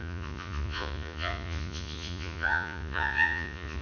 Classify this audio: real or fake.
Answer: fake